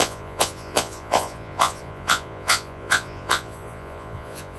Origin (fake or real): fake